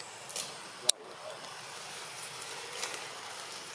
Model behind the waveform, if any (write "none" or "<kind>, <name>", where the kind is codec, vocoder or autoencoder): none